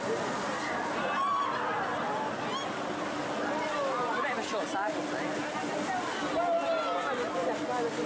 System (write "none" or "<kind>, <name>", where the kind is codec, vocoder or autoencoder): none